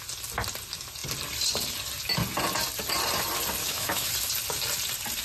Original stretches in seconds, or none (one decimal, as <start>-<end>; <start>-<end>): 0.0-3.6; 4.1-5.2